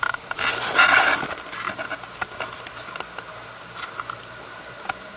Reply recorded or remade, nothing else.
recorded